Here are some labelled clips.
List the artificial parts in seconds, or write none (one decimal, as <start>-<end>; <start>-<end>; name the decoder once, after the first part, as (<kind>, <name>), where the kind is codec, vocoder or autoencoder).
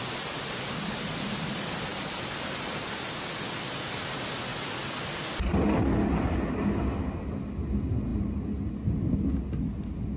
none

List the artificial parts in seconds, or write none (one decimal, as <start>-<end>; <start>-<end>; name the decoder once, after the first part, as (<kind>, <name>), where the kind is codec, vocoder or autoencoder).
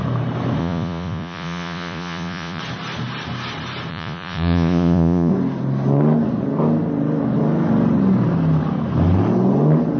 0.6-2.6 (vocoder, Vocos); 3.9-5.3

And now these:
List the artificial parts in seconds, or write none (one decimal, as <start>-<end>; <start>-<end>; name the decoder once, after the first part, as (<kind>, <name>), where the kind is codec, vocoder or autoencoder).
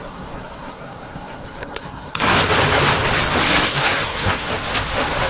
0.0-2.4 (codec, SNAC); 3.7-4.5